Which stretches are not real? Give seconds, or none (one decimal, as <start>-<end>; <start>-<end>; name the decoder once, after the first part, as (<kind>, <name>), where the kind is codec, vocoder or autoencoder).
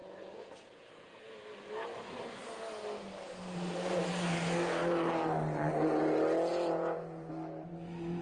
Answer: 0.0-1.3 (vocoder, Vocos); 6.5-7.3